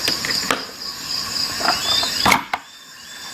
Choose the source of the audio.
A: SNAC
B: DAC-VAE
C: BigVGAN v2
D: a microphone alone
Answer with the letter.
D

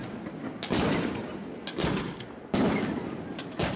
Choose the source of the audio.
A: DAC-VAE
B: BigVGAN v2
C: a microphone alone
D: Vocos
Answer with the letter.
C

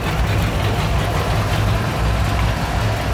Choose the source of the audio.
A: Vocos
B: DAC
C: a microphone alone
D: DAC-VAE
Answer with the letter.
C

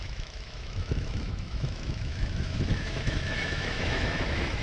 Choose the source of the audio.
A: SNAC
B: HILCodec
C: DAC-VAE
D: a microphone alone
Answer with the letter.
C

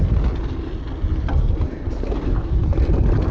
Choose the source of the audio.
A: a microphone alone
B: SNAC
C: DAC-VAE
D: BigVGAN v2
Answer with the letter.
A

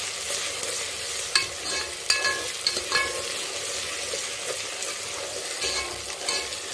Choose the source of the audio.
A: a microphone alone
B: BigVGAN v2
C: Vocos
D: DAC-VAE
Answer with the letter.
A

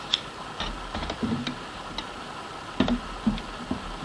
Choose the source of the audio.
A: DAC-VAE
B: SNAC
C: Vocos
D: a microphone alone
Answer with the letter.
D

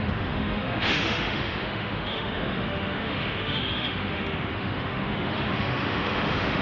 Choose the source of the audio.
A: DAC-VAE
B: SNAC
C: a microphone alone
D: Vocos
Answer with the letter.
A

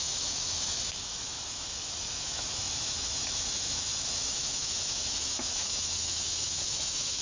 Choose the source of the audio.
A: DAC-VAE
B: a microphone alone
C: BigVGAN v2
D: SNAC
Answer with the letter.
A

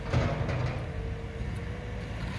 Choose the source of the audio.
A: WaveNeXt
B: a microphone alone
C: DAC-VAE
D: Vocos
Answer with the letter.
B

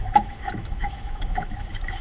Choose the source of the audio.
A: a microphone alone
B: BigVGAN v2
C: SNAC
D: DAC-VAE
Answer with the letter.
D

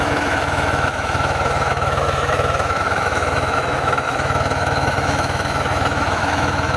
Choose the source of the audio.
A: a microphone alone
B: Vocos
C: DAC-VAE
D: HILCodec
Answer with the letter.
C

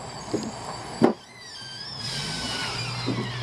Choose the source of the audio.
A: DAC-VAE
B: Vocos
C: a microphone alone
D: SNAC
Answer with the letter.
C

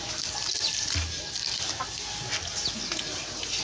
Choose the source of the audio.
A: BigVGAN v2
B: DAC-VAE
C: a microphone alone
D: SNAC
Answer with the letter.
C